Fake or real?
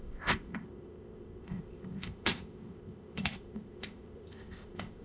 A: fake